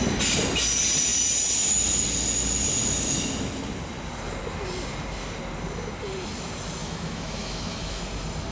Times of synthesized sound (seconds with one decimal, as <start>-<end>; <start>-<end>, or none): 6.8-8.0

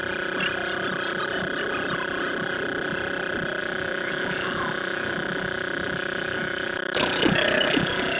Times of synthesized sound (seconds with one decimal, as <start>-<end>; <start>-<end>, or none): 3.6-8.2

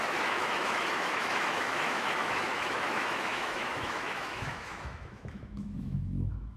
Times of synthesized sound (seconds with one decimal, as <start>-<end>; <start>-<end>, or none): 0.0-6.6

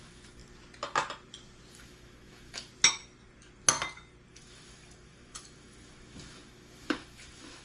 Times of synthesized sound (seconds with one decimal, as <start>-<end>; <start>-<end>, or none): 0.0-0.4; 1.7-2.7; 4.3-7.6

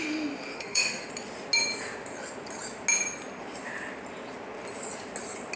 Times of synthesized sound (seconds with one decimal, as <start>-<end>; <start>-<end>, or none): 0.5-1.1

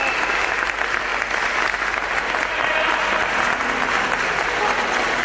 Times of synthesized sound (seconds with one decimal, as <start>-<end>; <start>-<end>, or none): none

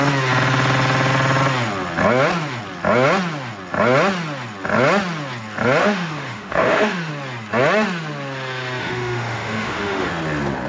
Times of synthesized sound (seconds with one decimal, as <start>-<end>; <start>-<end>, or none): 5.8-7.1; 8.8-10.1

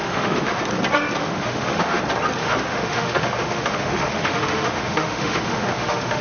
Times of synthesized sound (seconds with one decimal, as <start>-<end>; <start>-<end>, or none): 0.0-0.6; 1.2-2.0; 2.4-6.2